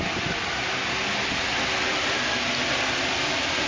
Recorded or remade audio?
recorded